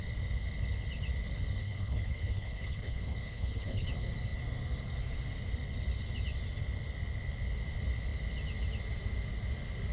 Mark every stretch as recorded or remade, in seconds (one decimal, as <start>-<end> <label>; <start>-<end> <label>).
0.0-1.6 recorded; 1.6-3.9 remade; 3.9-9.9 recorded